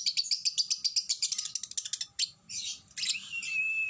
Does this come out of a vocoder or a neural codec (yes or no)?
no